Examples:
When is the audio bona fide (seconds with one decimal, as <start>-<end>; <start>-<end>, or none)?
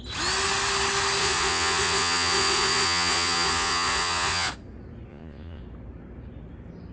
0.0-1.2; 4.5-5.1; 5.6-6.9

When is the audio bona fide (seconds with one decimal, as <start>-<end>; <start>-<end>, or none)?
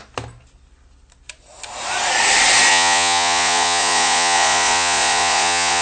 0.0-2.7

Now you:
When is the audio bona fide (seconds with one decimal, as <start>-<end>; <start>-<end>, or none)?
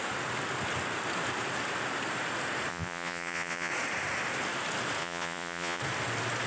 0.0-2.7; 3.7-5.0; 5.8-6.5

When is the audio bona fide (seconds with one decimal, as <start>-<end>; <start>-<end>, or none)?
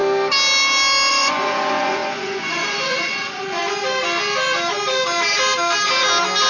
0.0-1.1; 3.6-6.5